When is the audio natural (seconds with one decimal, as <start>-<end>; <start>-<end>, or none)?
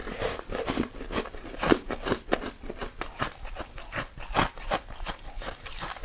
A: 0.0-6.0